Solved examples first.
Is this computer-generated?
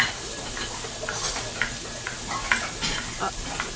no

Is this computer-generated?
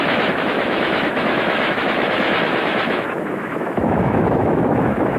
yes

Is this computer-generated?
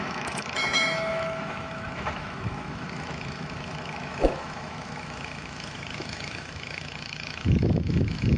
yes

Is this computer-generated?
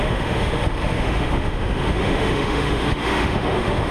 yes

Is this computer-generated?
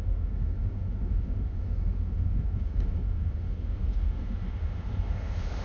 yes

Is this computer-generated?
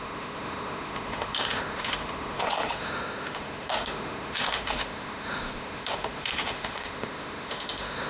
yes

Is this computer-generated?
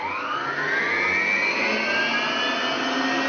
no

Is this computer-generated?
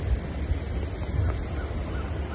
no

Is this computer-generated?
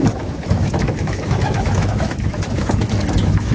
yes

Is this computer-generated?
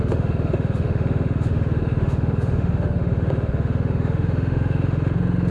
yes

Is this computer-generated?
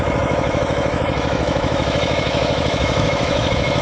yes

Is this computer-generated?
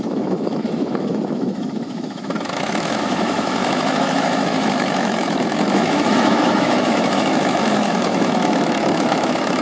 yes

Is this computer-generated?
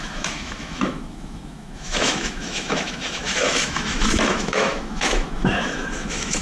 yes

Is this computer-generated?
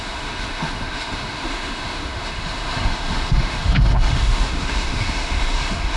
yes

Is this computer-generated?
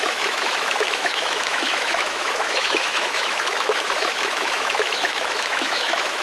yes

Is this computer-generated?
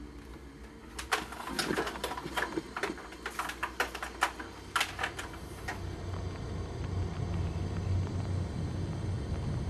no